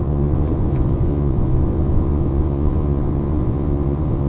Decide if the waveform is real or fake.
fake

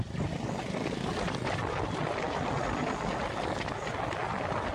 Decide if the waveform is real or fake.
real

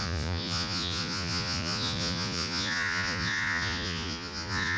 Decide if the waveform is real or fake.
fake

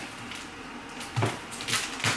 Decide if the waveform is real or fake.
real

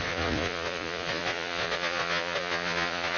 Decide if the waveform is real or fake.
fake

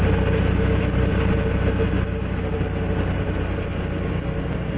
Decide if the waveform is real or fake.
real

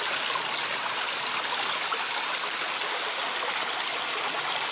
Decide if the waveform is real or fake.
real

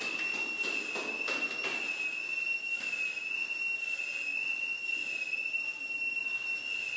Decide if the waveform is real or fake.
real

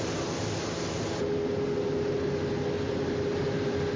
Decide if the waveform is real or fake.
real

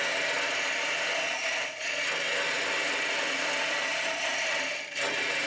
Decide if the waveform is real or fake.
real